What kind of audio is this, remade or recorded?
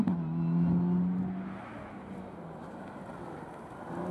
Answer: recorded